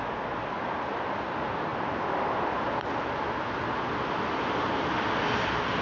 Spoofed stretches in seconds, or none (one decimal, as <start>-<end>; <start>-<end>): none